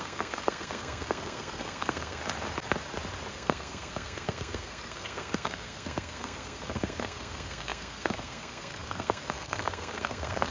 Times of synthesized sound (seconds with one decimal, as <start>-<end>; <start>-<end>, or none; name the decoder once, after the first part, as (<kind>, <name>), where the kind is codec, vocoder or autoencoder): 0.0-2.2 (codec, SNAC); 3.3-10.5